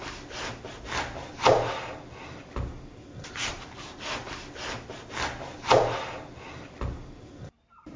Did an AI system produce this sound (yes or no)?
no